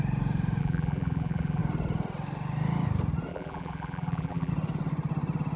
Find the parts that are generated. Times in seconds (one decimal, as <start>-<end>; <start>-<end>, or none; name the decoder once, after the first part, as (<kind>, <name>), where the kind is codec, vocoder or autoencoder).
0.6-1.6 (vocoder, BigVGAN v2); 3.3-4.5